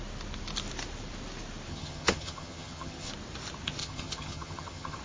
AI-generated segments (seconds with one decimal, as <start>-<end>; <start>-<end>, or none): 1.7-3.1; 3.8-5.0